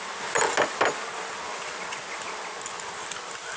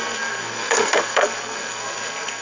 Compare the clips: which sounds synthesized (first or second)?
second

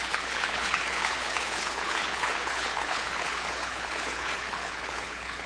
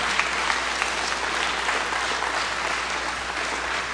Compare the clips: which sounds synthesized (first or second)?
first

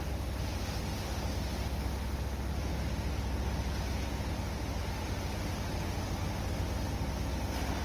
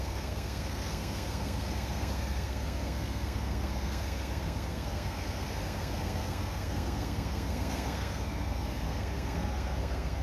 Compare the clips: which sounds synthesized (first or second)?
second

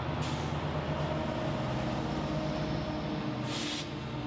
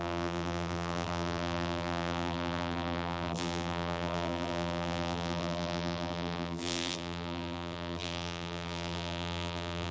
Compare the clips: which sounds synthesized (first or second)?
second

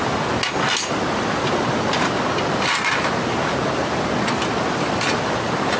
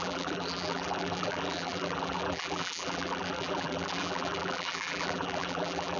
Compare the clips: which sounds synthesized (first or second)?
second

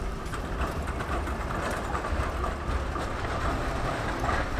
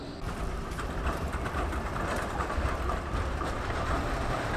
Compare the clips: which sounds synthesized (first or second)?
second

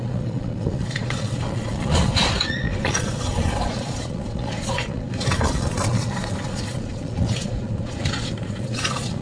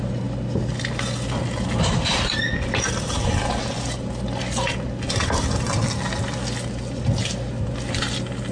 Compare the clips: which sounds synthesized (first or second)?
first